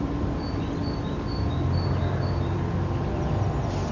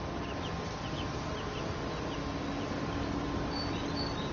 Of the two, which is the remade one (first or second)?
first